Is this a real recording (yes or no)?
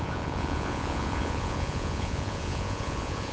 no